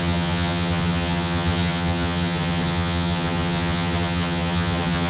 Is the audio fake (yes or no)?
yes